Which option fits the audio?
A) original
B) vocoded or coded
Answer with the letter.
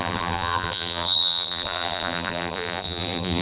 B